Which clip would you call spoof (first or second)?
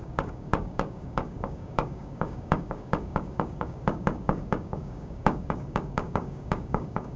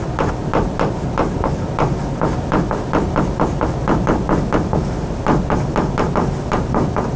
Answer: first